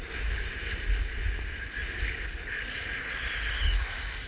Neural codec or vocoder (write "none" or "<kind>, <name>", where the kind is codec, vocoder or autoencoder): none